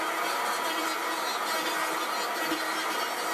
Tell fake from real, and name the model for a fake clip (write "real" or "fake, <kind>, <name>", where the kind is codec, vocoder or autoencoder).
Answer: real